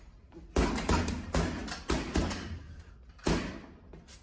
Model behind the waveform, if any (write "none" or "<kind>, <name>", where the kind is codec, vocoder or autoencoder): none